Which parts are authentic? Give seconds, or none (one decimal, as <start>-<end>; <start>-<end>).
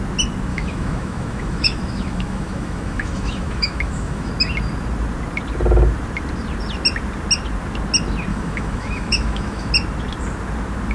0.0-0.5; 4.3-8.3; 9.7-10.9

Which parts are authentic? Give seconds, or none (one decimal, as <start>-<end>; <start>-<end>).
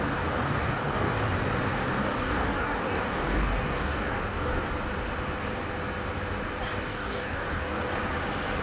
0.0-0.4; 1.3-2.0; 4.7-6.9; 7.9-8.6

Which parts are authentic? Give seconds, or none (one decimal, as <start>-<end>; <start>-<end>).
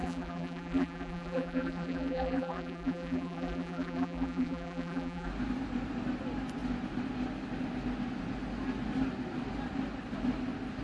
5.3-10.8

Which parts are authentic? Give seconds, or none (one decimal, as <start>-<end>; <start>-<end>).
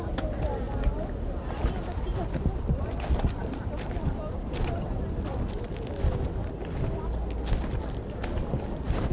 0.0-9.1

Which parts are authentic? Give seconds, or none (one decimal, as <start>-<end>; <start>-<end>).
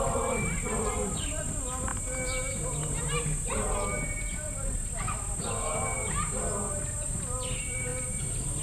1.9-6.7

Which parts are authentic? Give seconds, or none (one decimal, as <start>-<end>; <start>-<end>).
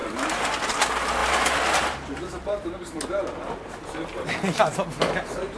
none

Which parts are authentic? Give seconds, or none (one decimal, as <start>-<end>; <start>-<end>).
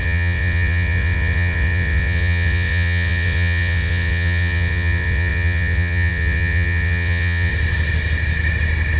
7.5-9.0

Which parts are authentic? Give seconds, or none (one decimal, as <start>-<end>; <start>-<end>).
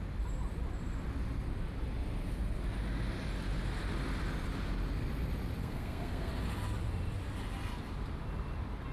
0.0-5.6; 6.3-8.9